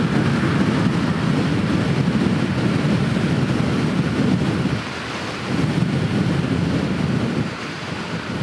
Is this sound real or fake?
real